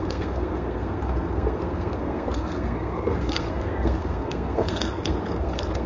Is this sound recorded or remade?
remade